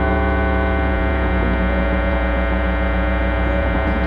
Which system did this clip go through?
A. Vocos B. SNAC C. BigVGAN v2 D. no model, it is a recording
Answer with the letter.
A